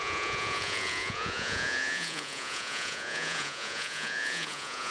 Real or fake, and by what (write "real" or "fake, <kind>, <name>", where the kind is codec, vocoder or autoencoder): fake, vocoder, Vocos